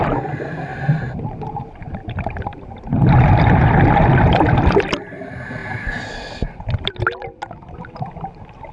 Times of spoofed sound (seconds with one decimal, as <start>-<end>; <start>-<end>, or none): 0.7-3.5